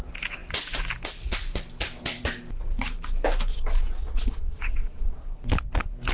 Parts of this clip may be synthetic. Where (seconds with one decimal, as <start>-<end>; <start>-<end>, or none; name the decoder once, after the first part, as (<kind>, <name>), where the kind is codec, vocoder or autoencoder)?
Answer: 3.5-5.2 (vocoder, Vocos)